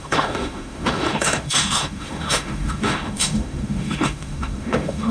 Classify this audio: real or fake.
fake